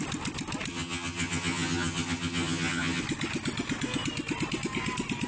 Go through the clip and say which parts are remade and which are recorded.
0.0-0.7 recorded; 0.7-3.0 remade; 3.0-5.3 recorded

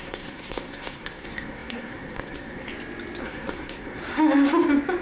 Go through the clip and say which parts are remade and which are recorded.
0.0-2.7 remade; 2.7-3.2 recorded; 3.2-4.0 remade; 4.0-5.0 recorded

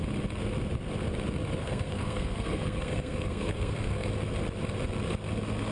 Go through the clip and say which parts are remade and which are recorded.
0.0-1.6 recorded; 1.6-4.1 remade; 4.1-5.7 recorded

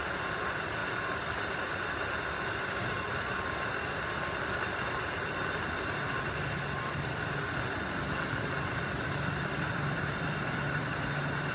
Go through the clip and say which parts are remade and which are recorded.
0.0-11.5 recorded

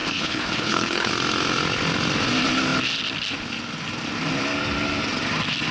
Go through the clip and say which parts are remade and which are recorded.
0.0-1.1 remade; 1.1-5.7 recorded

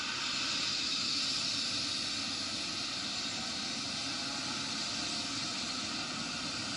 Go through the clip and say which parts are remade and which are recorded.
0.0-0.7 recorded; 0.7-1.2 remade; 1.2-6.8 recorded

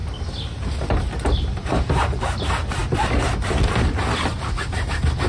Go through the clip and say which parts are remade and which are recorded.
0.0-5.3 recorded